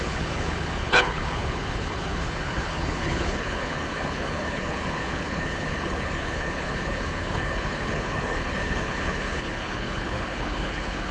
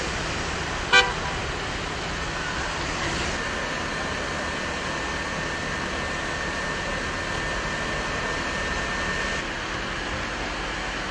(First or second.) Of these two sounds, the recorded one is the second